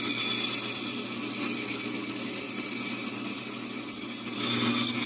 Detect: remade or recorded recorded